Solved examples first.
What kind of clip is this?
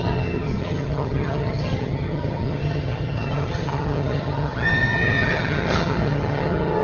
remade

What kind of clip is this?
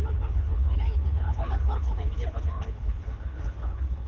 remade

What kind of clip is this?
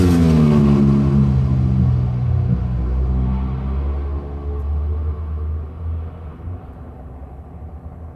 recorded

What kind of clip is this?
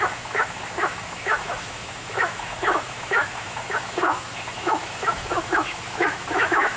remade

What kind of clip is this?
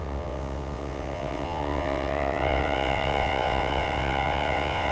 remade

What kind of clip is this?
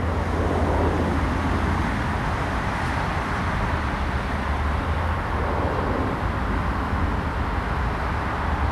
recorded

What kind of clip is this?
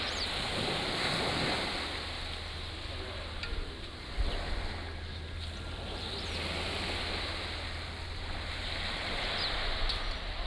recorded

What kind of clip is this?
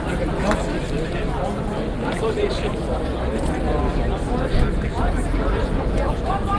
recorded